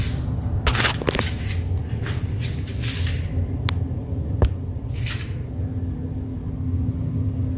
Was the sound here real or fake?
real